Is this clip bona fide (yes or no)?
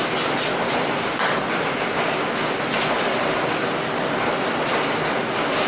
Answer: yes